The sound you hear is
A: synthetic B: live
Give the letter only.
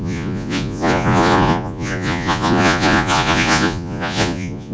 A